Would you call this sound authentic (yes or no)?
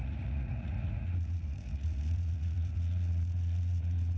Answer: no